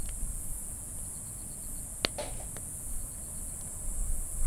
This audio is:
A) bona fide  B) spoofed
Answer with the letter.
A